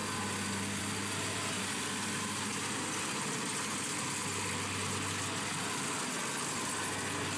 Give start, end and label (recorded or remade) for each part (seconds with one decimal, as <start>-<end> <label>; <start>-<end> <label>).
0.0-7.4 recorded